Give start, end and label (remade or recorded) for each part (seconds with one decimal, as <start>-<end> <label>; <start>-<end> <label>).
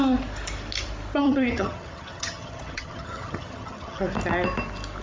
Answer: 0.0-1.2 recorded; 1.2-4.0 remade; 4.0-5.0 recorded